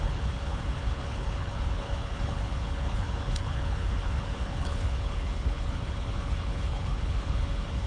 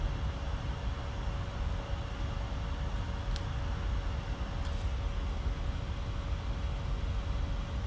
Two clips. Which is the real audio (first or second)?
second